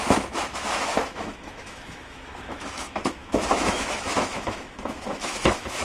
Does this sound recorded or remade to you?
remade